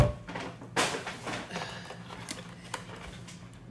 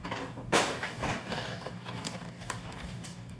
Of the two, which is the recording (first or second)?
first